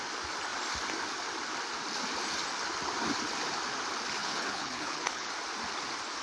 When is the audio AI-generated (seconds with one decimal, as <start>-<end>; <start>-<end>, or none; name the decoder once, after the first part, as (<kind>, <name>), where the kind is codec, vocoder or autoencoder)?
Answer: 4.2-5.3 (codec, HILCodec)